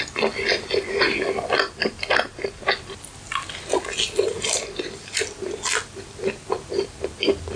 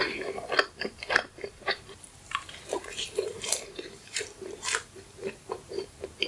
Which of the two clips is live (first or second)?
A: first